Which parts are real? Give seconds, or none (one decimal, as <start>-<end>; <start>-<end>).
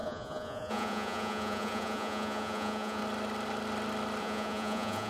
3.0-4.2